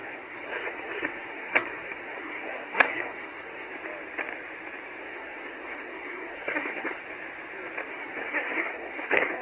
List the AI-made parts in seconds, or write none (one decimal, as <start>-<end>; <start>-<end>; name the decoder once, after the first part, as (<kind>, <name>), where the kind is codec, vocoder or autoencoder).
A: 0.0-3.7 (codec, SNAC); 5.0-7.0; 7.9-9.4